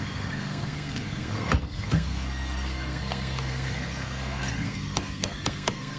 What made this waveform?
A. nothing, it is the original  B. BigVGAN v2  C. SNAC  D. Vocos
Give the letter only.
C